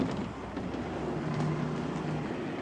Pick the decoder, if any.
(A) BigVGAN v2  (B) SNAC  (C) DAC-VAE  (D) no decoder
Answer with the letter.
D